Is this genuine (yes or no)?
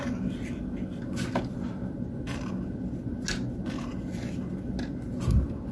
yes